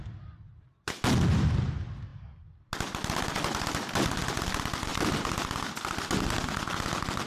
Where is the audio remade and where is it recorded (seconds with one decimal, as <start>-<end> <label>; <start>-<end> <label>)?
0.0-7.3 recorded

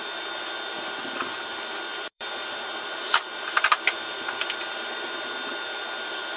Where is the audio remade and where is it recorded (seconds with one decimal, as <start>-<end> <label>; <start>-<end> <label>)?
0.0-1.9 recorded; 1.9-5.5 remade; 5.5-6.4 recorded

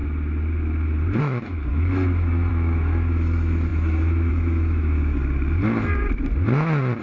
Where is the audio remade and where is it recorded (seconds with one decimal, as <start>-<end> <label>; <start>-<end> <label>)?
0.0-1.2 recorded; 1.2-5.2 remade; 5.2-7.0 recorded

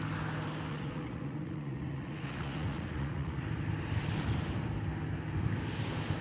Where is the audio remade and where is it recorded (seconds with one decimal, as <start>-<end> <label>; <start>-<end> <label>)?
0.0-0.7 recorded; 0.7-3.4 remade; 3.4-6.2 recorded

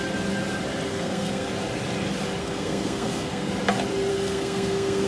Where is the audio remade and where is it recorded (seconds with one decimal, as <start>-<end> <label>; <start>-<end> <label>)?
0.0-0.9 recorded; 0.9-1.5 remade; 1.5-2.4 recorded; 2.4-3.5 remade; 3.5-4.1 recorded; 4.1-5.1 remade

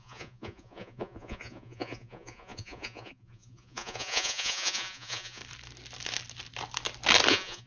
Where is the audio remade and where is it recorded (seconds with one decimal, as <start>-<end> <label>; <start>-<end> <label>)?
0.0-5.4 remade; 5.4-7.3 recorded; 7.3-7.7 remade